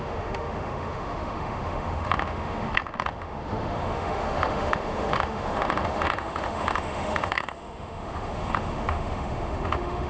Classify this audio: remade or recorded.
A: remade